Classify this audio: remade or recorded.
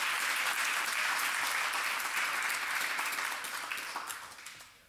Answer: remade